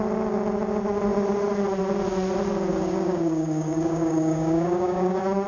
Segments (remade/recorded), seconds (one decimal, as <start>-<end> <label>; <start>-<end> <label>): 0.0-2.7 recorded; 2.7-5.1 remade; 5.1-5.5 recorded